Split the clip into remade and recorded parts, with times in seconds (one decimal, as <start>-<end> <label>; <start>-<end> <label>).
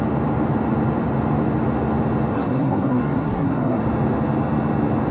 0.0-2.3 recorded; 2.3-3.8 remade; 3.8-5.1 recorded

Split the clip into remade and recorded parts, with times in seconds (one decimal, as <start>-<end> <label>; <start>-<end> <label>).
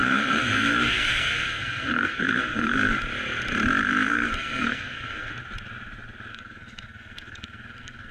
0.0-2.9 remade; 2.9-3.8 recorded; 3.8-5.3 remade; 5.3-6.3 recorded; 6.3-8.1 remade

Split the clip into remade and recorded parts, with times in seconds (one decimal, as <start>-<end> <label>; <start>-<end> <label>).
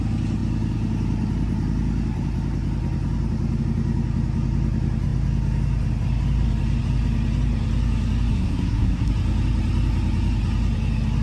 0.0-8.3 recorded; 8.3-9.1 remade; 9.1-11.2 recorded